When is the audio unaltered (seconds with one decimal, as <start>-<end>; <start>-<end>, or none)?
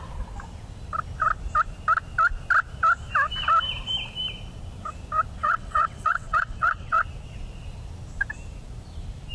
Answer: 0.0-5.4; 7.0-9.3